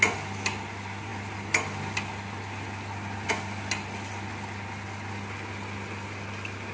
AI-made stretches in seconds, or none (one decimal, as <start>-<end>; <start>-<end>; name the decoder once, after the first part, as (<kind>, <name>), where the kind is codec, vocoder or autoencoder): none